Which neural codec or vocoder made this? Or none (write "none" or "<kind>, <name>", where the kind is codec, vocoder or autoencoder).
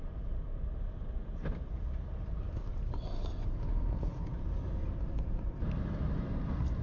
vocoder, BigVGAN v2